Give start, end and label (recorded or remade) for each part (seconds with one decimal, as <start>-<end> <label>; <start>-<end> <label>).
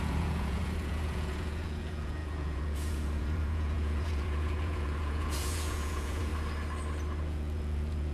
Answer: 0.0-6.3 remade; 6.3-7.2 recorded; 7.2-8.1 remade